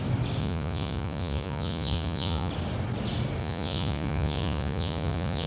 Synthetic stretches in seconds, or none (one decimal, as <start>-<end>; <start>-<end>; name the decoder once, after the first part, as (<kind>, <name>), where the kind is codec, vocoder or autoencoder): 0.4-2.5 (vocoder, Vocos); 3.4-5.5